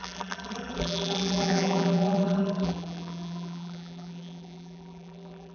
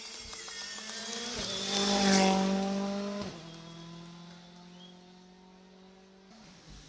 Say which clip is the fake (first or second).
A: first